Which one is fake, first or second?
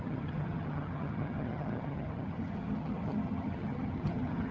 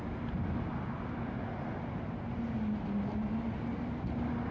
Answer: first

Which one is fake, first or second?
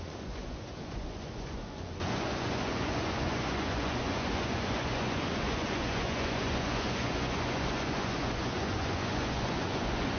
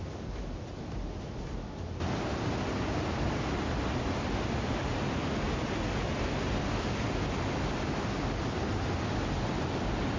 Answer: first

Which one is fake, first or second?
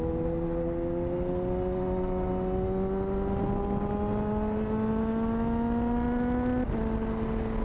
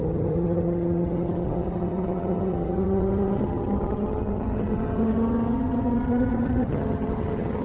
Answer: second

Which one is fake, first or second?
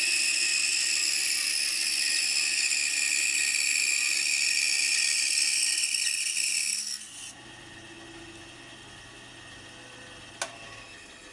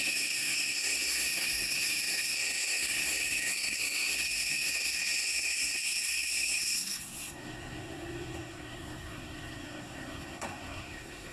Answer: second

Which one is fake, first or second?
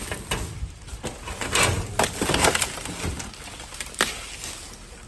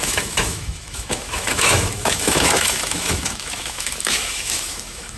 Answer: second